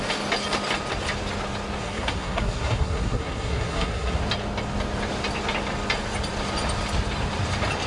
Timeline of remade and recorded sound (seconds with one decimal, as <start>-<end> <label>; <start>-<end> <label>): 0.0-1.8 recorded; 1.8-4.2 remade; 4.2-7.9 recorded